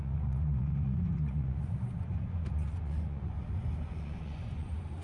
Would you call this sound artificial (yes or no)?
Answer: yes